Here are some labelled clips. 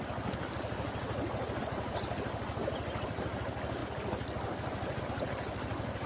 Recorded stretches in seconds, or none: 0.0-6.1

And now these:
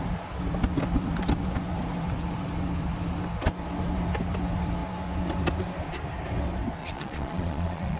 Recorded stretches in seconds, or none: 0.0-6.8

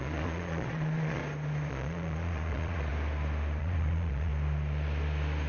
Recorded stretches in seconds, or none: 1.2-1.7; 2.9-3.6; 4.3-5.5

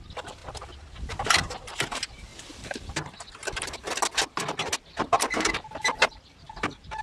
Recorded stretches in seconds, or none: 3.8-5.0

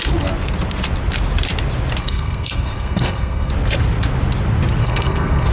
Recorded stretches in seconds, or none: 0.0-2.0; 3.5-4.8

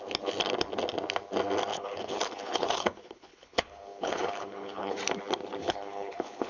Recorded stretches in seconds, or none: 0.0-1.7; 5.0-5.6

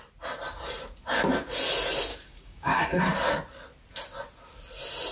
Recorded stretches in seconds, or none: 0.0-2.1; 3.0-5.1